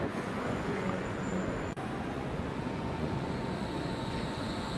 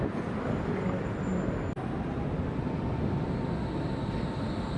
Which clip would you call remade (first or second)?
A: first